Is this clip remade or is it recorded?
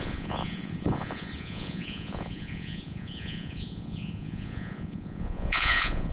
remade